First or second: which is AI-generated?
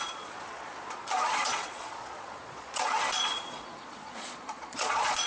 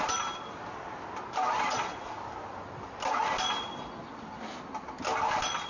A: first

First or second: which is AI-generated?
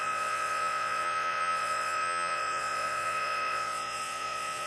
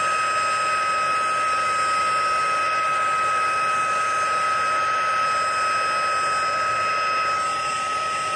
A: first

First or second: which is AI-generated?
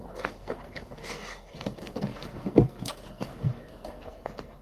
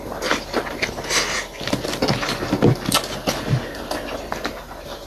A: first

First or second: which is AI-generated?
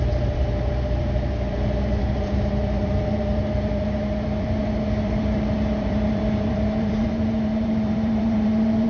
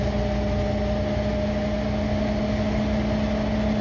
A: first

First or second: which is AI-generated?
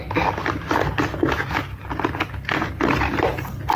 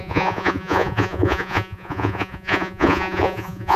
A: second